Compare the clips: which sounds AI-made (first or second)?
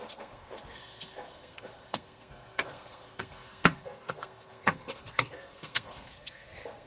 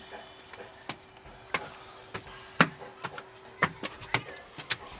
first